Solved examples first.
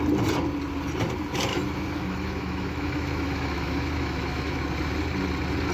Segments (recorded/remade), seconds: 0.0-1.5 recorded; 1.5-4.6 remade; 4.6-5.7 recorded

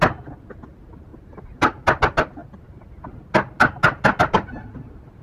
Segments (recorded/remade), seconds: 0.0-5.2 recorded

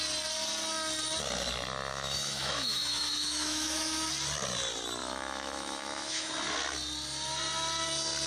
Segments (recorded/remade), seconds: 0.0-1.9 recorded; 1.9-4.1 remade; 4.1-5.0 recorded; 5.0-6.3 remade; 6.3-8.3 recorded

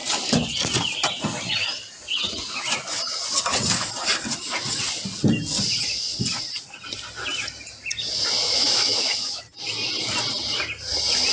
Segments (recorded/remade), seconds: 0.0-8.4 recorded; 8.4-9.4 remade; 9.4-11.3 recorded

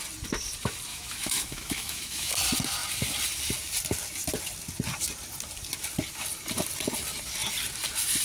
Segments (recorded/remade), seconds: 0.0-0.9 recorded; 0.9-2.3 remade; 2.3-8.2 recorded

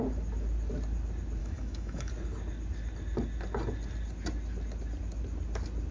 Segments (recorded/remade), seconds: 0.0-1.4 recorded; 1.4-2.1 remade; 2.1-5.9 recorded